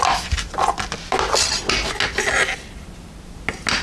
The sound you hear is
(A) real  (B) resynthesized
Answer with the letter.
A